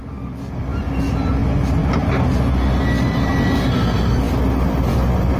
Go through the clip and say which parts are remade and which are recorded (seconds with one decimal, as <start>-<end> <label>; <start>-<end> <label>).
0.0-5.4 recorded